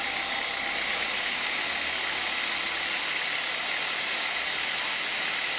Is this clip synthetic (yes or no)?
no